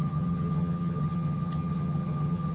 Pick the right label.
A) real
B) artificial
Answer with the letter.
B